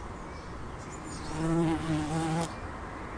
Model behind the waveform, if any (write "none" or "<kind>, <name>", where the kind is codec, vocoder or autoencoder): none